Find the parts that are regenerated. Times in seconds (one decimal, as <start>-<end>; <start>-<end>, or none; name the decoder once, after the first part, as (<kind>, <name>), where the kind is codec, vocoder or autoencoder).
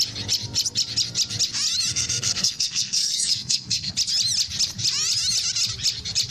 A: 1.9-3.9 (codec, SNAC)